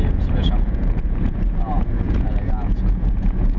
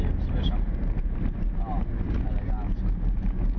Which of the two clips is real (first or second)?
second